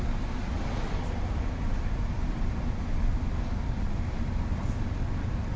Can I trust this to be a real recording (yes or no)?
no